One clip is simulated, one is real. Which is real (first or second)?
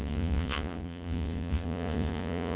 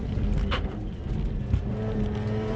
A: second